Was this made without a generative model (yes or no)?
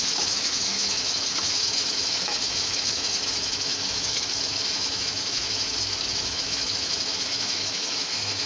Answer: no